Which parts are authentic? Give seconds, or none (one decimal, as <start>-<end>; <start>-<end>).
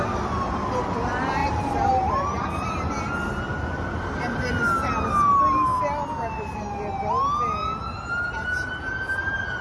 0.0-1.4; 2.1-9.6